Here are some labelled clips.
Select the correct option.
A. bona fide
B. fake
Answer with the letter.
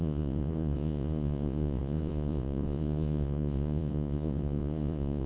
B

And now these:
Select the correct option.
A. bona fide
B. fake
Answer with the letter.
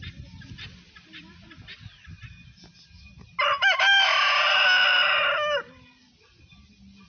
A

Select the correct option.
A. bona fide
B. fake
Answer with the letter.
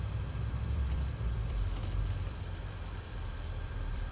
B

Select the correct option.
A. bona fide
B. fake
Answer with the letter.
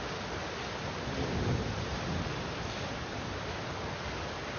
A